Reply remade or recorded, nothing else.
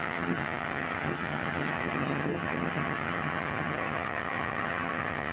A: remade